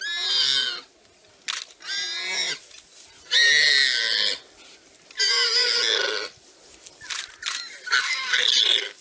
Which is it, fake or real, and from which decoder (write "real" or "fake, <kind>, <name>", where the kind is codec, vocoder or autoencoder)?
real